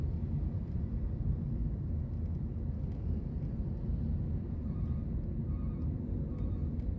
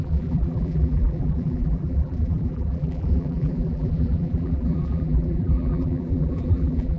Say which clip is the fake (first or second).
second